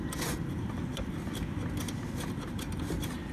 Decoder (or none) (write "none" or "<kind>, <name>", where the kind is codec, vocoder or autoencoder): none